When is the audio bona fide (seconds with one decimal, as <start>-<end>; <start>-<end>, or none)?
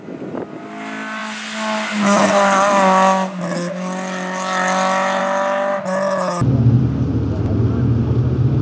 0.0-8.6